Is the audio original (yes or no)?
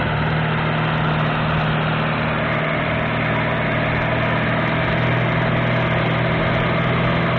yes